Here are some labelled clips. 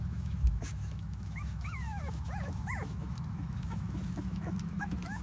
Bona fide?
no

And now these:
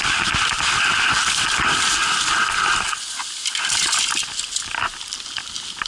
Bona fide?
yes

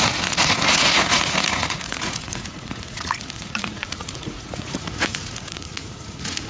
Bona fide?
no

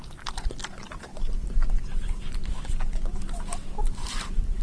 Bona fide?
no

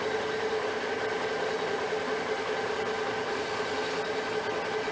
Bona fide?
yes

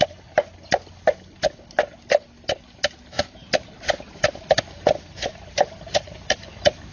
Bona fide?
yes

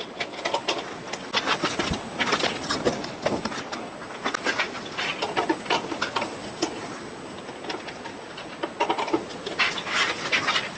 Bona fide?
yes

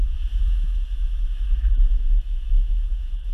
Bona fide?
no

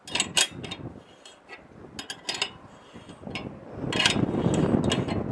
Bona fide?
yes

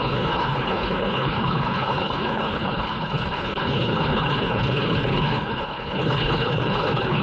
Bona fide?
no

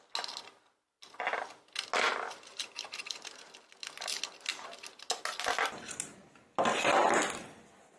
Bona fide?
yes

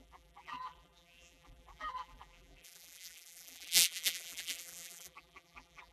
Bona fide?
no